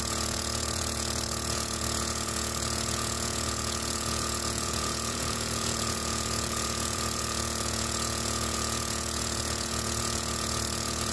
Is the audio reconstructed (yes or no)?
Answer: yes